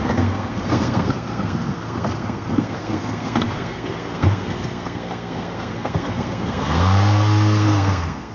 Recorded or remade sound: remade